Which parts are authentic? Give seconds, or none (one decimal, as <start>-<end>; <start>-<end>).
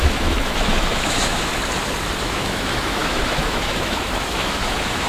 1.5-2.2